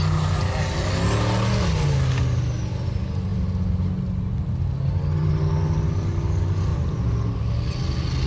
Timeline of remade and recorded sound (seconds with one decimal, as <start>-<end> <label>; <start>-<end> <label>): 0.0-8.3 recorded